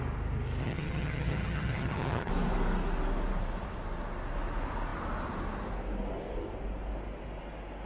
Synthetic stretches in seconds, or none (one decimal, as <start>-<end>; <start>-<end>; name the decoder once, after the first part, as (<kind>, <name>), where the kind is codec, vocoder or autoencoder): 0.6-2.3 (vocoder, HiFi-GAN)